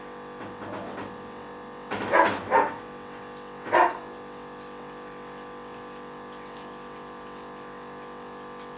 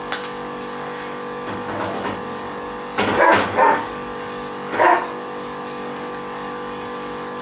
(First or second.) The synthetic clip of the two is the second